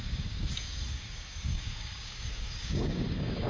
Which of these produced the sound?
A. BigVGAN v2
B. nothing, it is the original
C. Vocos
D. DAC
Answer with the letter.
D